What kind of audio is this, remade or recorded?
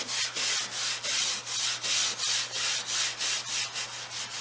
recorded